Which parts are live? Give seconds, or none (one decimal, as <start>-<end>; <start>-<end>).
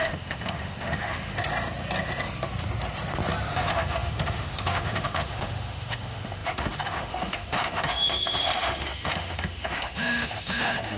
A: 1.4-3.5